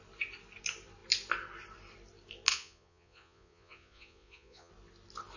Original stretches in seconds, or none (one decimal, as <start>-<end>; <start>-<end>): 0.0-2.5; 4.7-5.4